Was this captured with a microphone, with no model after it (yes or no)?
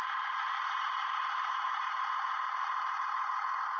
yes